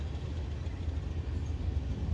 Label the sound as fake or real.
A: real